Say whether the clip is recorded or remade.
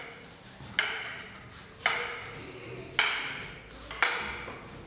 recorded